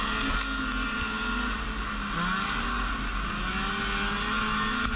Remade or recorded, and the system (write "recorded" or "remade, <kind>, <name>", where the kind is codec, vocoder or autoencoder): recorded